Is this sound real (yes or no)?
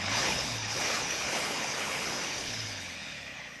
no